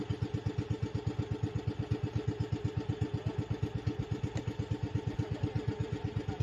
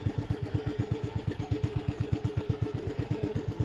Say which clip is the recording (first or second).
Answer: first